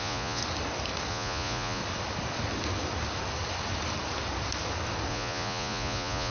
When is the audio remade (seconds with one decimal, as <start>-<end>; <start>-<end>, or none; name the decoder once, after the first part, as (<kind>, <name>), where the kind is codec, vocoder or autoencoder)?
0.0-0.4 (vocoder, Vocos); 1.1-1.8; 5.1-6.3